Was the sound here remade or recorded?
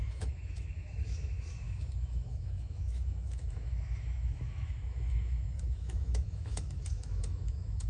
remade